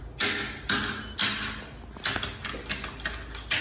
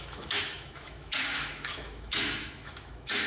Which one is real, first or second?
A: first